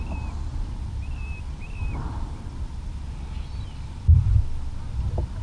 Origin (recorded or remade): recorded